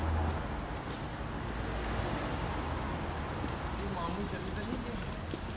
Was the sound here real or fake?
real